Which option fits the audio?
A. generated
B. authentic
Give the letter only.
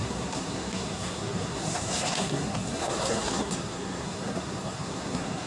A